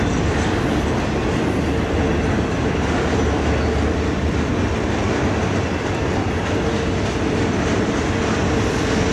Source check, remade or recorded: recorded